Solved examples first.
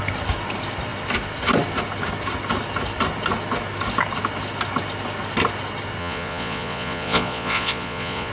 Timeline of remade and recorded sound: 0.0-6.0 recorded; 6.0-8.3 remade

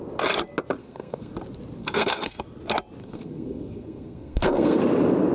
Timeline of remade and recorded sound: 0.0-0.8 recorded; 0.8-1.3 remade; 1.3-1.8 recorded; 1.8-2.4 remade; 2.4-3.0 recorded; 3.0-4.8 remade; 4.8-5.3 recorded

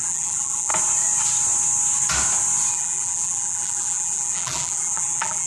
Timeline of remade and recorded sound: 0.0-0.7 remade; 0.7-2.7 recorded; 2.7-5.5 remade

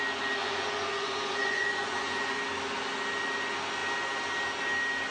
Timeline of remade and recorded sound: 0.0-0.4 recorded; 0.4-2.4 remade; 2.4-5.1 recorded